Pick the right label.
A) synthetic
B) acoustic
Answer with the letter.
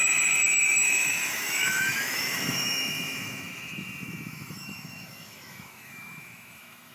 A